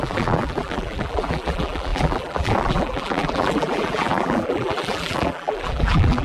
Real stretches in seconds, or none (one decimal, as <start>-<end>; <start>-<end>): none